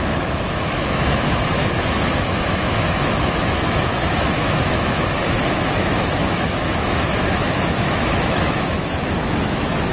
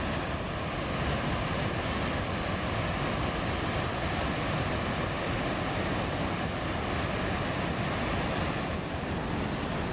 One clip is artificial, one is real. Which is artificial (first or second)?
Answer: first